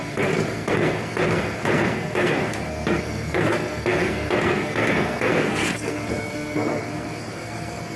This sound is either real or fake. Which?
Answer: fake